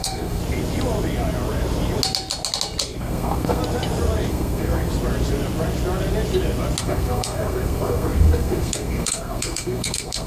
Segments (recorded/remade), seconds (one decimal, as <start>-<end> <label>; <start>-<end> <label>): 0.0-0.4 remade; 0.4-3.0 recorded; 3.0-3.6 remade; 3.6-4.3 recorded; 4.3-4.9 remade; 4.9-6.8 recorded; 6.8-10.3 remade